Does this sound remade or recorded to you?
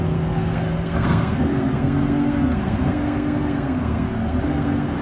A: remade